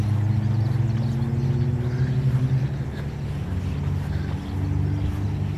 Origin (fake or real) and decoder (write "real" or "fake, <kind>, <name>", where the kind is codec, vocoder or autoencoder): real